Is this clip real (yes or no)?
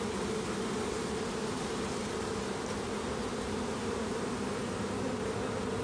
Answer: yes